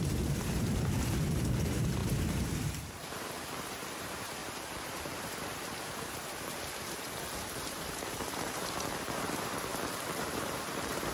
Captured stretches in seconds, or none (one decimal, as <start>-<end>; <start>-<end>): 9.7-10.2